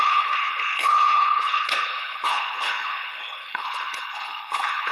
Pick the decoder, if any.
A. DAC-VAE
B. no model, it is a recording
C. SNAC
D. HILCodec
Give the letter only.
D